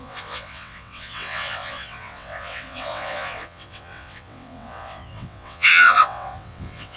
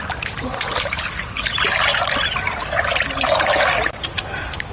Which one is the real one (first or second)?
second